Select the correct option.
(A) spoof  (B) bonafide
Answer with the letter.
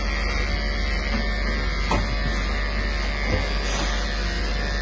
B